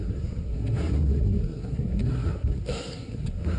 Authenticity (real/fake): fake